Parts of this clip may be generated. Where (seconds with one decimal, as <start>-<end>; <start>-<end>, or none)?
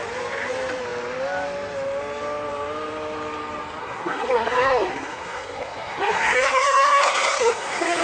3.8-8.0